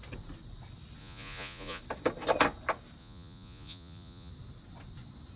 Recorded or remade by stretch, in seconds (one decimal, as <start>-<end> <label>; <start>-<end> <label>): 0.0-1.0 recorded; 1.0-1.8 remade; 1.8-3.0 recorded; 3.0-4.3 remade; 4.3-5.4 recorded

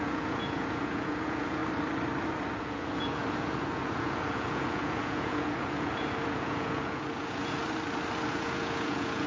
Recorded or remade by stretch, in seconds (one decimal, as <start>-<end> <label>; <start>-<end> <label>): 0.0-1.6 remade; 1.6-2.6 recorded; 2.6-7.6 remade; 7.6-8.3 recorded; 8.3-9.3 remade